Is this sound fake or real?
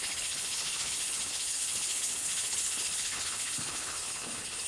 fake